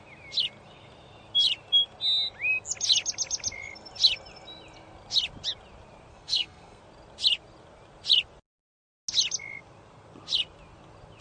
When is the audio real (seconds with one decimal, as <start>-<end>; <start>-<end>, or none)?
0.0-6.1; 6.8-11.2